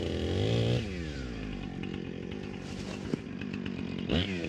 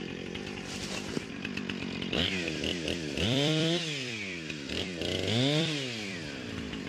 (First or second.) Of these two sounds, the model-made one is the second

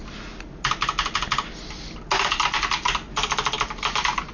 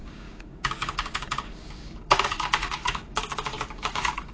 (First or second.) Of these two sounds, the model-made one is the second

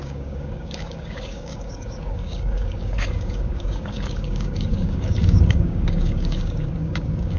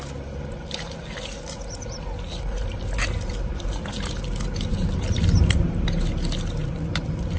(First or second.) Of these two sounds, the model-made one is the first